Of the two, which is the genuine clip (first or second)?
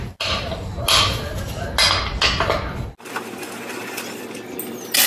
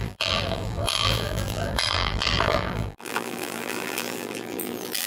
first